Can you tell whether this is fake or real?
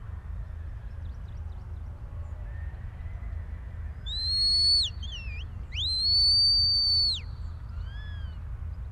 real